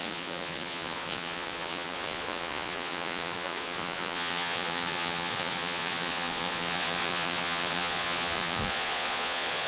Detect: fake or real fake